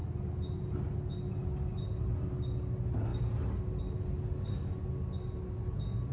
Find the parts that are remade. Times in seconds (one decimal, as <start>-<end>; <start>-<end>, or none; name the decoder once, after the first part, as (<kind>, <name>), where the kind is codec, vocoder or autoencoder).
none